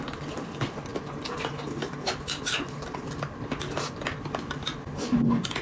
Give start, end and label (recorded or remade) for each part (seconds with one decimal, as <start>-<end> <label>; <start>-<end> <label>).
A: 0.0-5.6 recorded